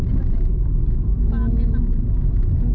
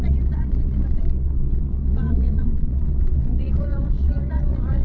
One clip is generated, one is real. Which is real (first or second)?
first